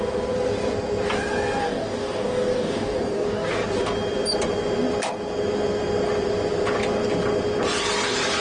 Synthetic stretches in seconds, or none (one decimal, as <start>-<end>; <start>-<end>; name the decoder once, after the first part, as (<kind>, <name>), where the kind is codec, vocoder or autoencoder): 1.6-3.5 (codec, DAC)